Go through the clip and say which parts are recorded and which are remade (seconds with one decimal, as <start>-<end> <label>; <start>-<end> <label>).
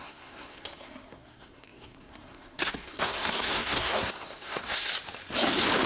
0.0-4.9 remade; 4.9-5.9 recorded